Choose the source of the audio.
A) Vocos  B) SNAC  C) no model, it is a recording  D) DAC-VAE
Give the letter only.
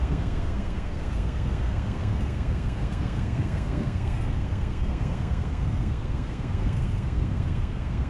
B